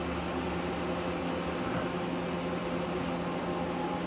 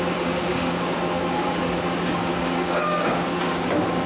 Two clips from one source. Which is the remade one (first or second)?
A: second